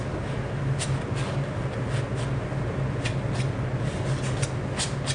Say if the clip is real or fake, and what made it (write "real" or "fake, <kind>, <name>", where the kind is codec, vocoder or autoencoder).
real